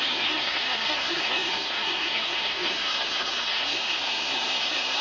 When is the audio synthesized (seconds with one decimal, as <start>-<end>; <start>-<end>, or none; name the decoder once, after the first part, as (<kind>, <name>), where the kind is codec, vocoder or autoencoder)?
0.0-5.0 (codec, SNAC)